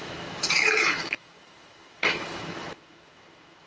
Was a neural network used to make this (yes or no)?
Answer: yes